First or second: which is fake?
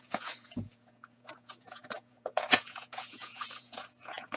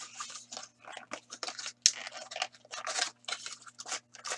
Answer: first